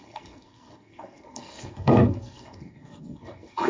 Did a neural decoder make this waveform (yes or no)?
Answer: yes